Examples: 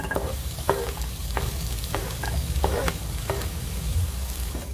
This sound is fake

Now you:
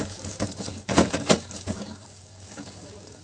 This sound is fake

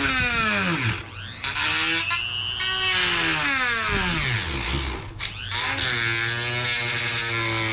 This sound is real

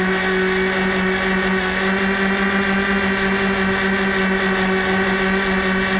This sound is real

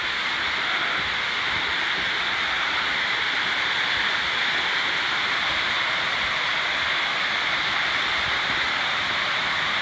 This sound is real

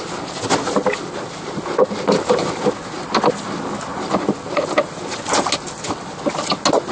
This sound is real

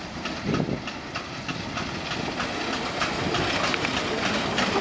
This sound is real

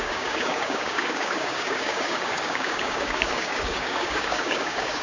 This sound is fake